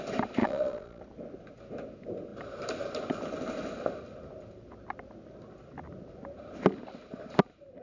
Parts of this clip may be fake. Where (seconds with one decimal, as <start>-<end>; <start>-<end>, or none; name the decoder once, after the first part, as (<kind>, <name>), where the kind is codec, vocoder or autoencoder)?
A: 0.4-1.0 (vocoder, Vocos)